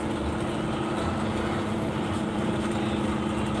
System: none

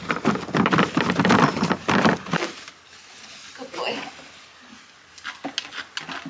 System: none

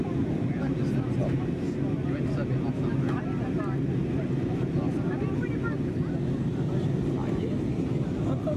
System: none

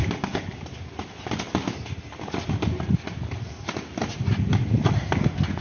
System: none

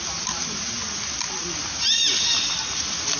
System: none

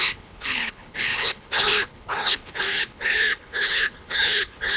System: codec, HILCodec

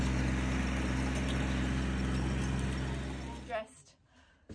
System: none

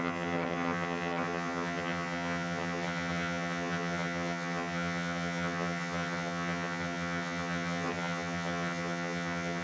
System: vocoder, HiFi-GAN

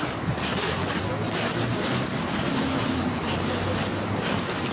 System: none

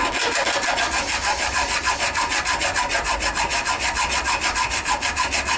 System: vocoder, BigVGAN v2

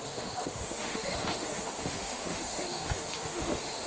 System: autoencoder, DAC-VAE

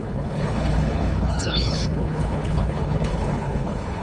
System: codec, HILCodec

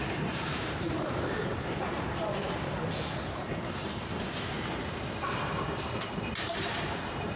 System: vocoder, BigVGAN v2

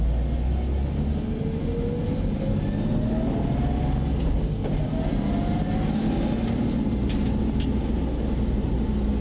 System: none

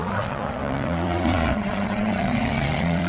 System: vocoder, Vocos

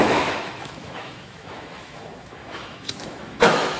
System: autoencoder, DAC-VAE